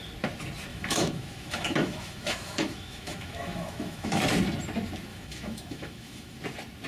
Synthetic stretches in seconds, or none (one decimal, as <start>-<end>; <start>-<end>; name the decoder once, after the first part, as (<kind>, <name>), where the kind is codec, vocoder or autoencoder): 0.7-4.2 (autoencoder, DAC-VAE); 5.1-6.4